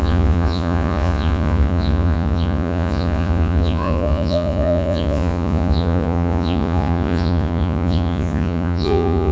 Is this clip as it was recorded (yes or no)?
no